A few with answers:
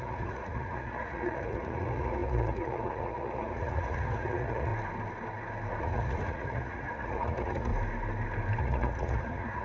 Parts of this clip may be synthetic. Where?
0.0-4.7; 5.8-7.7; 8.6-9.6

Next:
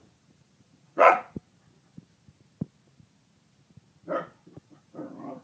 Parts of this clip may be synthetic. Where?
0.0-1.4; 4.6-5.4

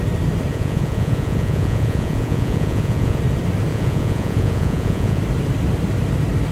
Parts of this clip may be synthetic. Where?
0.5-3.2; 3.7-5.2

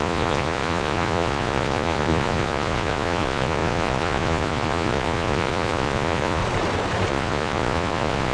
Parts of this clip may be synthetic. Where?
0.0-6.4; 7.1-8.3

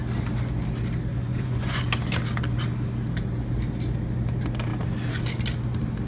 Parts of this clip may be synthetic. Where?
1.1-1.8

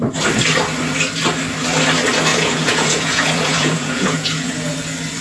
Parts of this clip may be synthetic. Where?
2.3-4.5

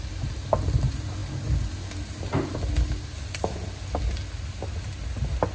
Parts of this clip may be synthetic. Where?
none

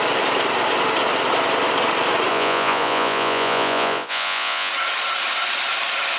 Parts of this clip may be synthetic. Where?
2.3-4.7